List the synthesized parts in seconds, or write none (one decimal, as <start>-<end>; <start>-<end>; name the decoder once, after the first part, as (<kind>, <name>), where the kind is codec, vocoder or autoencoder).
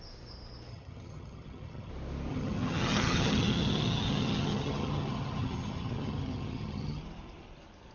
0.7-1.9 (vocoder, HiFi-GAN); 2.3-7.0